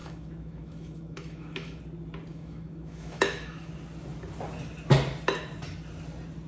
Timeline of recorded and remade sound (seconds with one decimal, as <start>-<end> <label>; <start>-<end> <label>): 0.0-1.8 remade; 1.8-2.3 recorded; 2.3-3.7 remade; 3.7-6.5 recorded